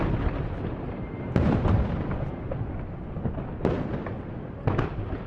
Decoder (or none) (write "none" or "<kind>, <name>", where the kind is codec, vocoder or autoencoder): none